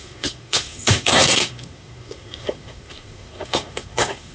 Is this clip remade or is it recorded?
remade